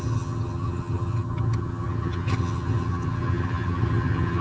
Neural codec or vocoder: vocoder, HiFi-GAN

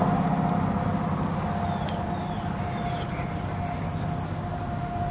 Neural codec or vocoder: none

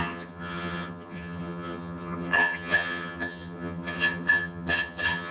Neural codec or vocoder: vocoder, HiFi-GAN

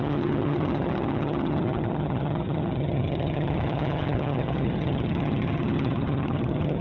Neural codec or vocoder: vocoder, HiFi-GAN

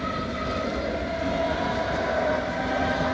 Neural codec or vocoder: none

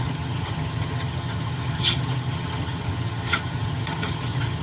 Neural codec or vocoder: vocoder, HiFi-GAN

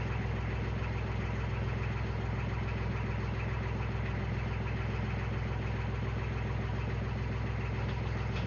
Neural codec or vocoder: none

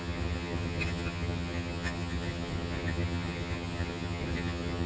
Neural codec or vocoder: vocoder, HiFi-GAN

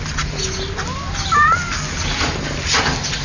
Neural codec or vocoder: none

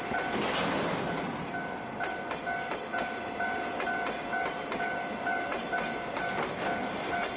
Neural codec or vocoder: none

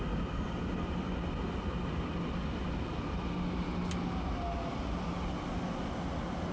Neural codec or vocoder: none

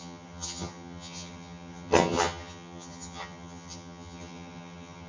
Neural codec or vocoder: vocoder, HiFi-GAN